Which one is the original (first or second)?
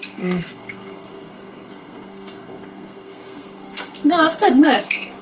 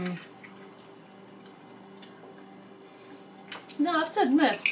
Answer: second